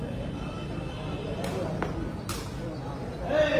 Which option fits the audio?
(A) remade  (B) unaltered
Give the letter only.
B